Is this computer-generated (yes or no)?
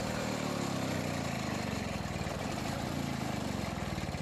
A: no